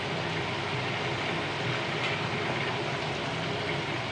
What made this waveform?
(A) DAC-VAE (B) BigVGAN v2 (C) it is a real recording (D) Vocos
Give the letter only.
C